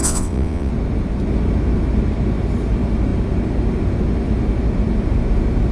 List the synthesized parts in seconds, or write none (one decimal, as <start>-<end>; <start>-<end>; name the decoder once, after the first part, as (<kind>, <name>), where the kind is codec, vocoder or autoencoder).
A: 0.0-0.7 (vocoder, WaveNeXt)